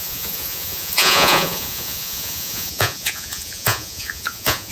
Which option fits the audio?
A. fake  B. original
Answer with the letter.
A